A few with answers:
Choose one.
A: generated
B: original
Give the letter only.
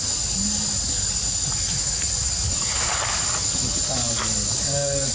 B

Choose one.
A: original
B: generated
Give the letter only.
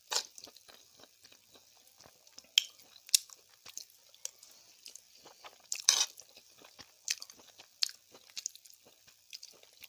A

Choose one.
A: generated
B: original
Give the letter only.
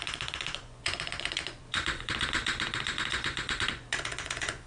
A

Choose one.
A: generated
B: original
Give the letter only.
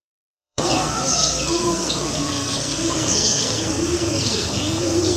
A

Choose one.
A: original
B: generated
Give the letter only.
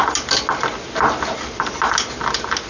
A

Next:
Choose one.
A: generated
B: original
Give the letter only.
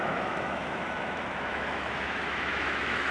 A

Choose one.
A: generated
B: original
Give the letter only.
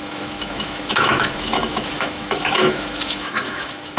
A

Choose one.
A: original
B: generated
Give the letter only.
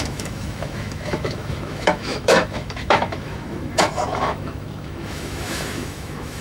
B